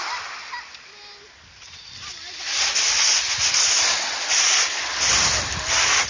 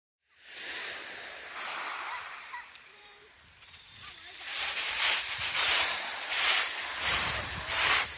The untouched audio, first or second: first